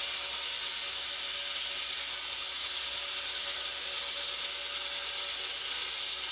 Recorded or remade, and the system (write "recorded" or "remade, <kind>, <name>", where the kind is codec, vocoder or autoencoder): recorded